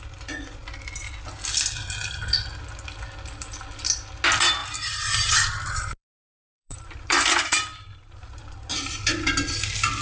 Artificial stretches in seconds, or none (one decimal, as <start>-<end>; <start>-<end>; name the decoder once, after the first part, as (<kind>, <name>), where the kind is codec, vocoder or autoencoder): 4.6-8.7 (vocoder, BigVGAN v2)